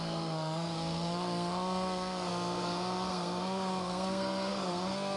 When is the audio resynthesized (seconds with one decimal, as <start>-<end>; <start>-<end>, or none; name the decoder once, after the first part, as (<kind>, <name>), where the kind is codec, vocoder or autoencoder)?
0.0-5.2 (codec, SNAC)